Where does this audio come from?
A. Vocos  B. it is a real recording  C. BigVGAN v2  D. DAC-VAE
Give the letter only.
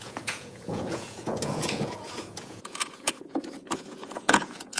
A